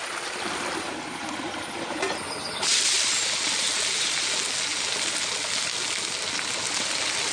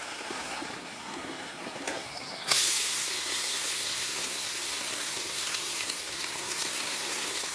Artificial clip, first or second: second